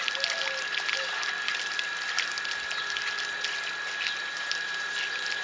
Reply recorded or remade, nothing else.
recorded